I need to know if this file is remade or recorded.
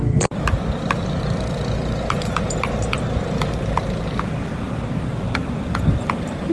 remade